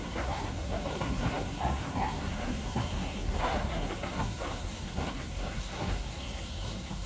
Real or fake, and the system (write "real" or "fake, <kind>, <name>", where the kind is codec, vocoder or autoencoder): fake, codec, SNAC